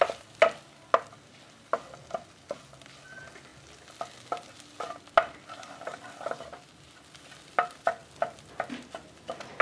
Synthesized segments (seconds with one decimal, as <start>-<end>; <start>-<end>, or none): none